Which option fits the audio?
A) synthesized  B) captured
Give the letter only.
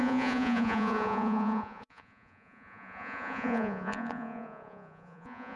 A